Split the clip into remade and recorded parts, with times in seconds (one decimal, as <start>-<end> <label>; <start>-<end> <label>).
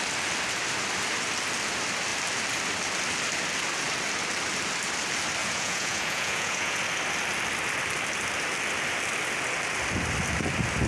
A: 0.0-5.4 recorded; 5.4-6.8 remade; 6.8-10.9 recorded